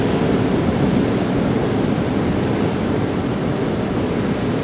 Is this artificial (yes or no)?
no